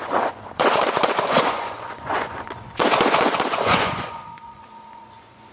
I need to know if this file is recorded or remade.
remade